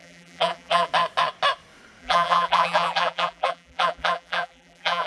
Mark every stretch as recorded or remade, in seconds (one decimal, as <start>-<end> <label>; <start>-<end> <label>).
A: 0.0-0.9 remade; 0.9-2.0 recorded; 2.0-5.1 remade